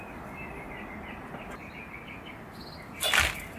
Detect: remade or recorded recorded